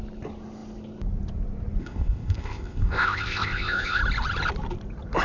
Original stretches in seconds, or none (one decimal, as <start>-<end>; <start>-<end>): 0.0-1.8; 4.0-5.2